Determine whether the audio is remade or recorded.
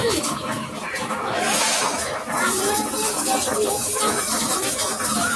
remade